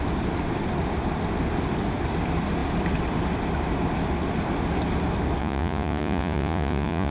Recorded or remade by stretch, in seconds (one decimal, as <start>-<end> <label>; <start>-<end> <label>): 0.0-5.4 recorded; 5.4-7.1 remade